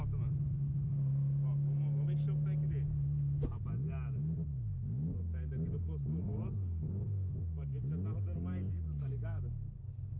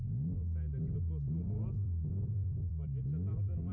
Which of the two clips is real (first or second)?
first